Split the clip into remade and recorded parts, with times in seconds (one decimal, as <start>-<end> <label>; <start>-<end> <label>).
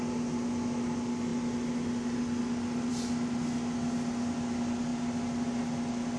0.0-6.2 recorded